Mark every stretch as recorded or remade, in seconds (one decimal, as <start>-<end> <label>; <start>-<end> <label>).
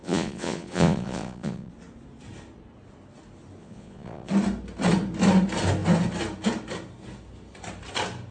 0.0-1.7 remade; 1.7-3.6 recorded; 3.6-4.3 remade; 4.3-8.3 recorded